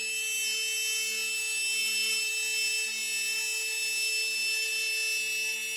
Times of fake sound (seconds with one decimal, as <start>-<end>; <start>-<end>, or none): 1.8-2.3